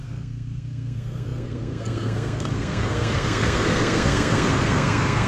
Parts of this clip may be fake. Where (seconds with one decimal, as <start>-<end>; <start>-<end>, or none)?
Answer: 0.0-5.3